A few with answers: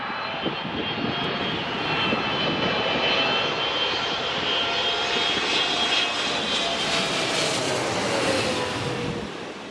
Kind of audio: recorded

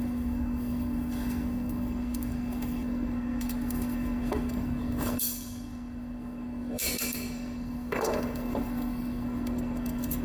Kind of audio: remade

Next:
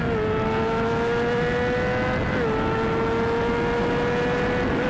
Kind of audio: recorded